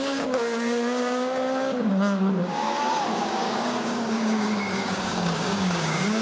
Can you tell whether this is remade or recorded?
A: remade